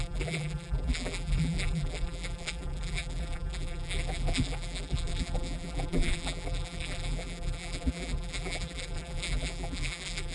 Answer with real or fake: fake